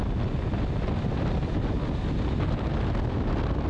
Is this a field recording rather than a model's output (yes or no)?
yes